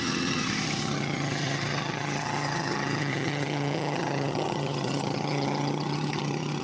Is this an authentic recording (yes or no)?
no